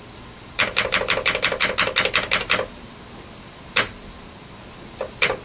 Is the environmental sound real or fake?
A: real